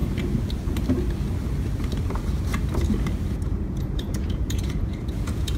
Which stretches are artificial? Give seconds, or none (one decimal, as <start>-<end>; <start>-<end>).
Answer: 3.3-5.6